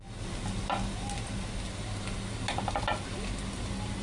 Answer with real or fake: real